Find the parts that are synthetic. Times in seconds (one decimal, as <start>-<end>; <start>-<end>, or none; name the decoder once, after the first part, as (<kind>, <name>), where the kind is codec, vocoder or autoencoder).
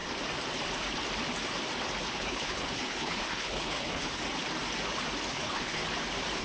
2.1-4.2 (codec, HILCodec); 5.3-5.8